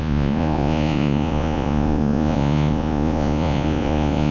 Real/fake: fake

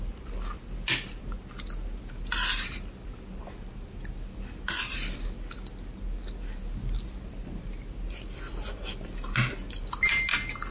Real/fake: real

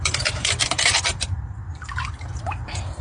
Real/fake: fake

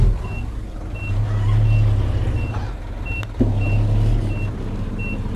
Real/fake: real